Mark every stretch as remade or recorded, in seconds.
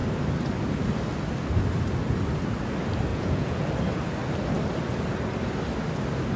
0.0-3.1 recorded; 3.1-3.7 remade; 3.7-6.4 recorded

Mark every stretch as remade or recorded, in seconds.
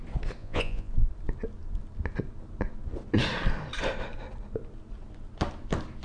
0.0-0.4 recorded; 0.4-0.9 remade; 0.9-6.0 recorded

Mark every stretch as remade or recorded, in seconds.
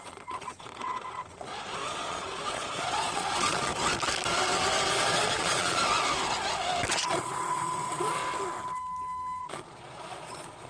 0.0-3.7 remade; 3.7-4.9 recorded; 4.9-5.8 remade; 5.8-6.9 recorded; 6.9-8.2 remade; 8.2-9.4 recorded; 9.4-10.7 remade